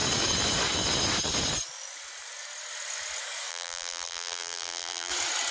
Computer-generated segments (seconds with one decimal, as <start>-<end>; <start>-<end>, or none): 3.5-5.1